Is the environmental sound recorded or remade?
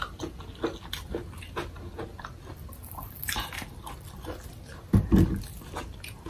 recorded